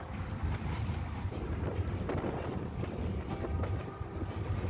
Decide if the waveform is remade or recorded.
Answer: recorded